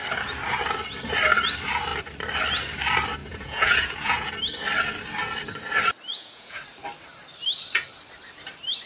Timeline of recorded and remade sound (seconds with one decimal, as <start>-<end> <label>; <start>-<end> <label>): 0.0-3.2 recorded; 3.2-4.3 remade; 4.3-6.1 recorded; 6.1-6.6 remade; 6.6-8.9 recorded